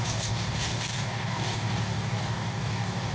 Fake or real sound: fake